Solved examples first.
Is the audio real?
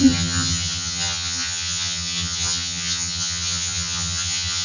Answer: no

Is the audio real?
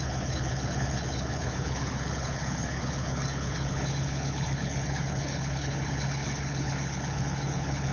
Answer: no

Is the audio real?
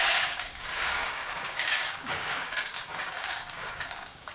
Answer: no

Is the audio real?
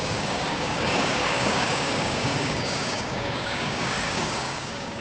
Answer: no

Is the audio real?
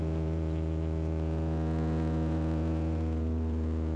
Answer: no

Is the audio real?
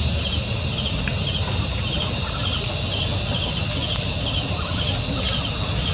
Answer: yes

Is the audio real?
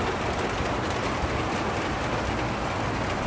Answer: yes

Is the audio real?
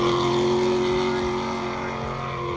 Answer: yes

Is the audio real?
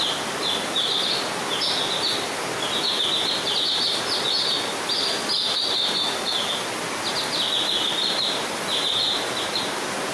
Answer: yes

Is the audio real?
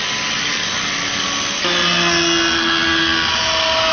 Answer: yes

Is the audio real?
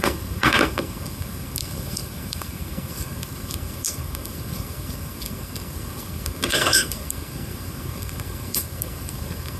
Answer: no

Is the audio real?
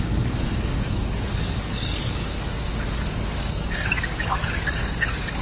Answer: no